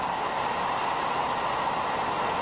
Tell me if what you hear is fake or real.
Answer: real